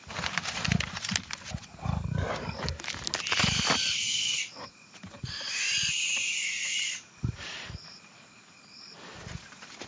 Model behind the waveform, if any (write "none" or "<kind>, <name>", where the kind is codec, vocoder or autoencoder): none